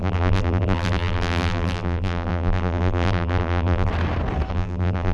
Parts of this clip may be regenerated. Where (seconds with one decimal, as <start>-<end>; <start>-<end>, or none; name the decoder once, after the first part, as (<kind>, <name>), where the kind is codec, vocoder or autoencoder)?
0.0-3.9 (vocoder, BigVGAN v2); 4.5-5.1